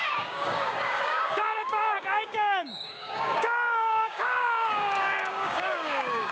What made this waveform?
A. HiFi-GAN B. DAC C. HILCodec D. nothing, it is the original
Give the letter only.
B